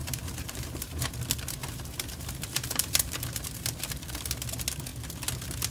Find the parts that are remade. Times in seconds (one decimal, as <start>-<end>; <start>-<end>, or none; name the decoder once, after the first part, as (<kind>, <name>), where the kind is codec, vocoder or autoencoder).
0.0-1.1 (vocoder, BigVGAN v2); 1.6-3.9